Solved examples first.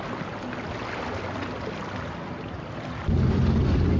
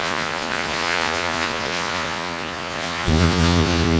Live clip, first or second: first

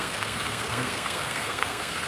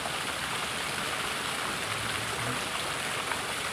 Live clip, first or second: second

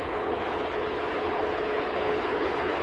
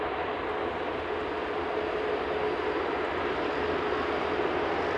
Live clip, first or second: second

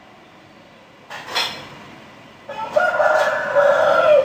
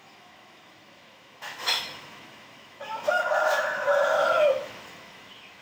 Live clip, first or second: first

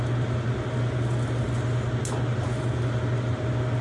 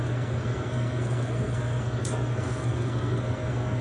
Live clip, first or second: first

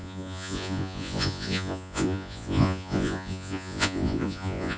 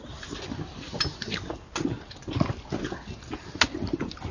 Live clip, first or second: second